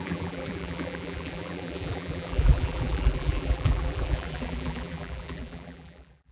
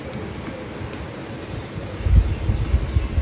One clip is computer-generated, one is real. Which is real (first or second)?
second